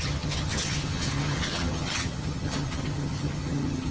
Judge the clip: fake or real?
fake